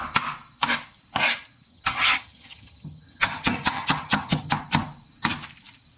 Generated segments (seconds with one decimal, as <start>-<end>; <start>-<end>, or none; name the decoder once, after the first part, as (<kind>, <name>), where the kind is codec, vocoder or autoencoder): 1.7-4.5 (vocoder, HiFi-GAN)